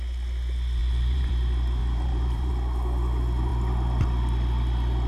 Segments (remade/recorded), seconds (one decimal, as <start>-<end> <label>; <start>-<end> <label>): 0.0-0.8 recorded; 0.8-1.3 remade; 1.3-1.8 recorded; 1.8-2.5 remade; 2.5-5.1 recorded